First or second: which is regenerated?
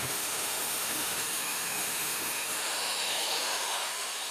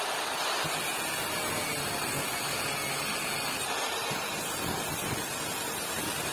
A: first